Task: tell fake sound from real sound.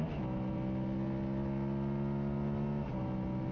real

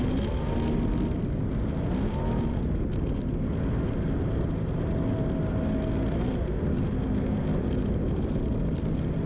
real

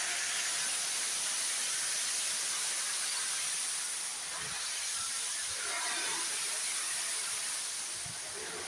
real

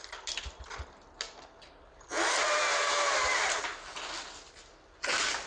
real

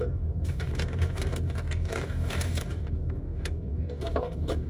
fake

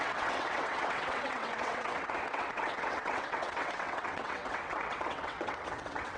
fake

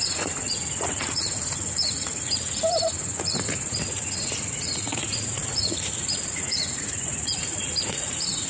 fake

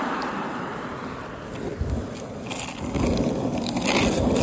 real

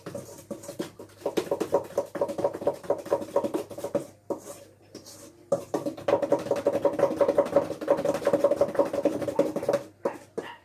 fake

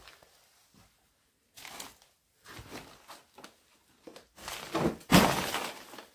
real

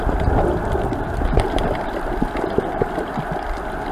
real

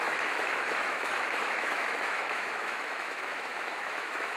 fake